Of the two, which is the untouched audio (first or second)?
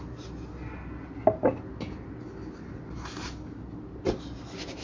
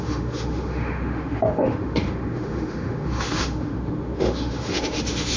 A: first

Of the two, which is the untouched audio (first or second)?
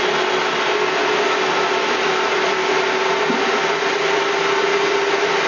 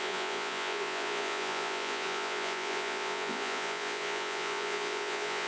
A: first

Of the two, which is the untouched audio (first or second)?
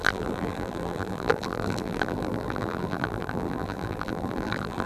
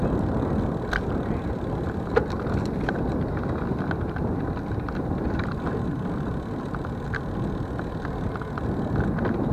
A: second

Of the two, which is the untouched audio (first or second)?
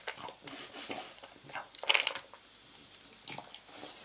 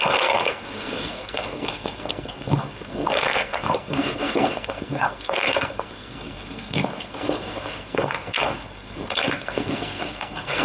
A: first